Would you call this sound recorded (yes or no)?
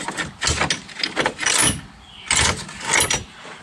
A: yes